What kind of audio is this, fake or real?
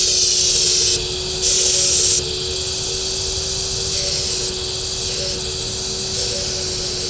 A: real